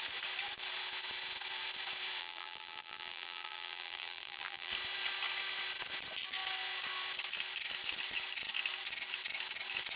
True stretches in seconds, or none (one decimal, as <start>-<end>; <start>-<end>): 0.0-2.2; 4.7-10.0